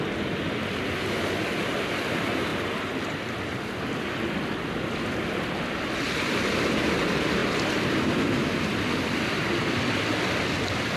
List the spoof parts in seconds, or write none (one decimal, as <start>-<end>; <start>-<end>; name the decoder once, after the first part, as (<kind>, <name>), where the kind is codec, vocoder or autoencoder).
none